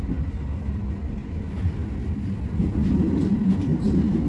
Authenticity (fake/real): real